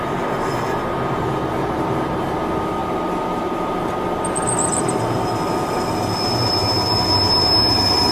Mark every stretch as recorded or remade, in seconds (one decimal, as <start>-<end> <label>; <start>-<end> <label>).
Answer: 0.0-8.1 recorded